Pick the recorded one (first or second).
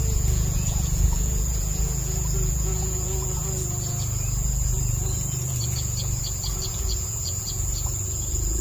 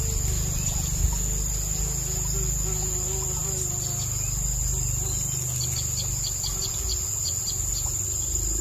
second